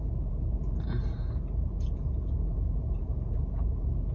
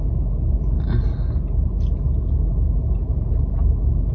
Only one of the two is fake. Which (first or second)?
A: first